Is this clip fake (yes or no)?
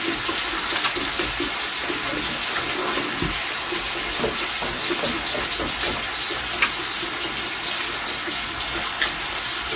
no